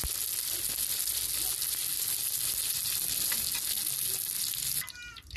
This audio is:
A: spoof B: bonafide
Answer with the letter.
B